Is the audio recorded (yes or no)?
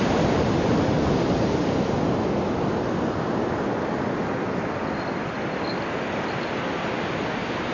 yes